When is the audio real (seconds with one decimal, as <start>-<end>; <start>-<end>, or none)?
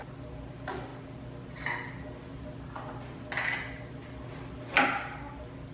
0.0-5.7